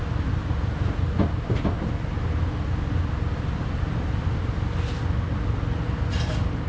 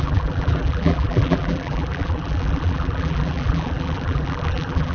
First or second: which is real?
first